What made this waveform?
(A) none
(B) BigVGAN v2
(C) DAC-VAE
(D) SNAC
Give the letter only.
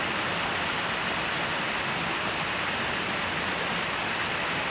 A